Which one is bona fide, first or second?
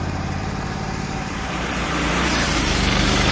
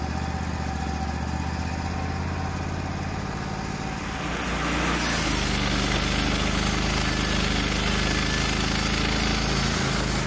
second